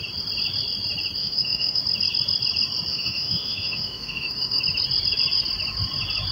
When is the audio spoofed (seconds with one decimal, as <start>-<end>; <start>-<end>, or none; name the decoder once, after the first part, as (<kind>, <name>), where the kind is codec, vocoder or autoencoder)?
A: 1.2-1.8 (autoencoder, DAC-VAE); 2.9-4.6